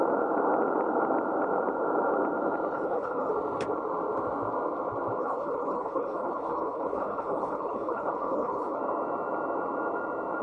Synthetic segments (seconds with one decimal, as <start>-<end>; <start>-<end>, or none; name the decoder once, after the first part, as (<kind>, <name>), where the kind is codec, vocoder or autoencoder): 2.7-3.3 (codec, HILCodec); 5.2-8.8